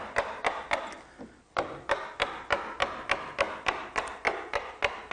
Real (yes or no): yes